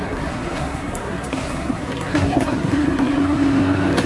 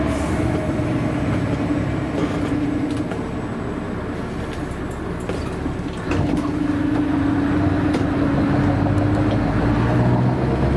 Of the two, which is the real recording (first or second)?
second